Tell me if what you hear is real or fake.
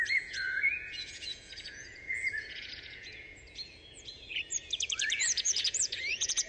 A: fake